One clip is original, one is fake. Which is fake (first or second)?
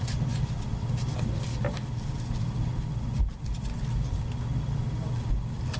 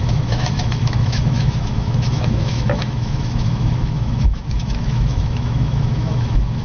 second